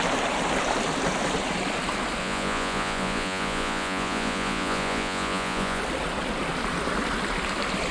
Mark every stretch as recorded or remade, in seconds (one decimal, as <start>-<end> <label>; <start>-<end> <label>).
0.0-2.2 recorded; 2.2-5.8 remade; 5.8-7.9 recorded